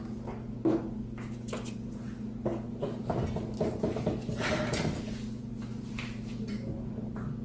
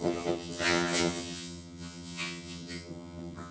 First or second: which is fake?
second